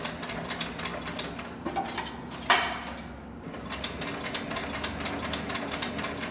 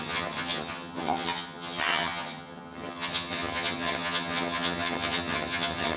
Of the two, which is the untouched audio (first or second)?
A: first